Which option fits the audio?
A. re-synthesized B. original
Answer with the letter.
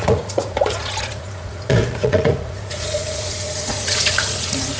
A